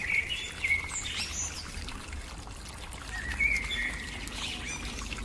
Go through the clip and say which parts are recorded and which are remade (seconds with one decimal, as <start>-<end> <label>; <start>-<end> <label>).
0.0-5.2 recorded